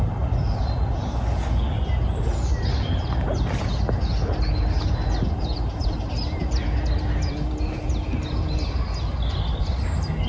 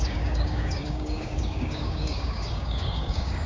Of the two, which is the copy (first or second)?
second